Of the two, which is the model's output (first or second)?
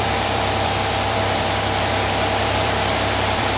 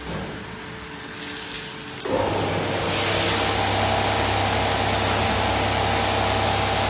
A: first